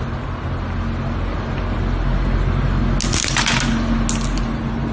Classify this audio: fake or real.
real